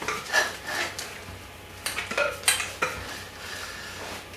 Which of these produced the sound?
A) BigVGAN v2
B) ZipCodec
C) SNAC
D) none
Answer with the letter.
D